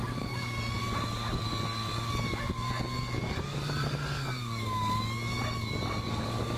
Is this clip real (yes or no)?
no